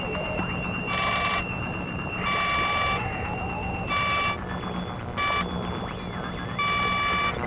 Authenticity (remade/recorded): recorded